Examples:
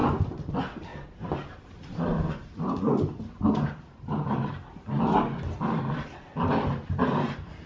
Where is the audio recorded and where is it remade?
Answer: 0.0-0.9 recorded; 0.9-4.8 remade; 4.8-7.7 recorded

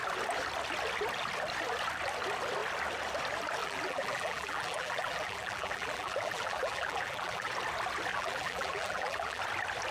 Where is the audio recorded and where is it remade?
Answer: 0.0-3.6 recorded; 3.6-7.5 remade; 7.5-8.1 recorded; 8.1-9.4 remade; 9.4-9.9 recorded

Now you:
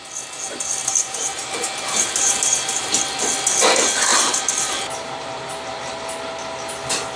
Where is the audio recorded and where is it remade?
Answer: 0.0-0.8 recorded; 0.8-3.0 remade; 3.0-4.1 recorded; 4.1-5.5 remade; 5.5-7.2 recorded

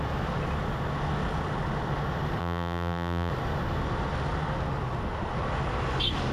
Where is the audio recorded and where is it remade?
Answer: 0.0-2.4 recorded; 2.4-3.3 remade; 3.3-6.3 recorded

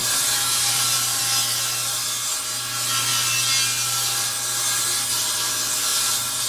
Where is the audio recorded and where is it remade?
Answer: 0.0-1.2 remade; 1.2-5.9 recorded; 5.9-6.5 remade

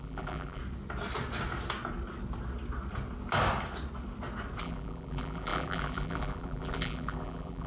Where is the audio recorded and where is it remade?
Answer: 0.0-0.6 remade; 0.6-4.6 recorded; 4.6-7.7 remade